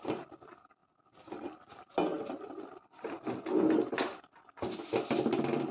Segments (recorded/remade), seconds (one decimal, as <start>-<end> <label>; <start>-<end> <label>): 0.0-5.7 recorded